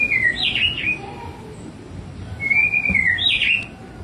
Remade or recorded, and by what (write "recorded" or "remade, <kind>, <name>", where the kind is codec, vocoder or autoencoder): recorded